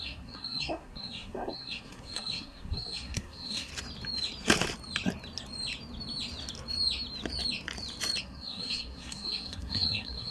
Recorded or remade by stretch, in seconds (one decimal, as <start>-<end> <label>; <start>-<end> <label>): 0.0-3.7 remade; 3.7-8.2 recorded; 8.2-10.3 remade